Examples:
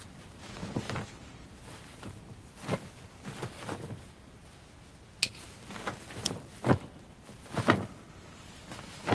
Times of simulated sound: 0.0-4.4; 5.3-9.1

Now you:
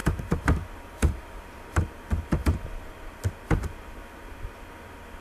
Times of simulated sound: 0.0-1.8

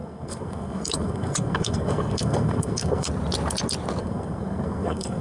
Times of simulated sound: 0.0-3.1; 4.0-5.2

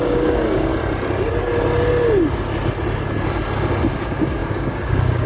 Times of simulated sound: 0.0-0.7; 3.9-5.3